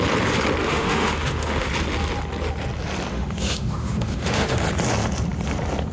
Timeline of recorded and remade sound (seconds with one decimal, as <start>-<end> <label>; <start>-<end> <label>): 0.0-0.6 recorded; 0.6-1.7 remade; 1.7-3.1 recorded; 3.1-4.6 remade; 4.6-5.9 recorded